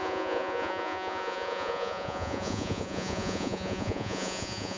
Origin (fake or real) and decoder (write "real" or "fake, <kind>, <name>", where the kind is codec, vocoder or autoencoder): fake, vocoder, Vocos